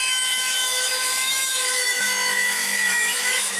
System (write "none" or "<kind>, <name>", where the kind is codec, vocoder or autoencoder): autoencoder, DAC-VAE